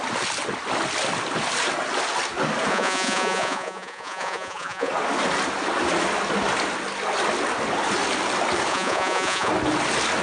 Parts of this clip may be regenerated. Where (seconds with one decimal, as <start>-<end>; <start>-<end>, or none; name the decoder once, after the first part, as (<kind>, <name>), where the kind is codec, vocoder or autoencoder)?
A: 2.7-4.9 (vocoder, Vocos); 8.7-9.5